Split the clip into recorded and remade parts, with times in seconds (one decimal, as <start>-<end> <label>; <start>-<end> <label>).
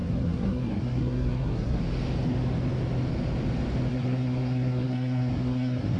0.0-1.8 remade; 1.8-3.9 recorded; 3.9-6.0 remade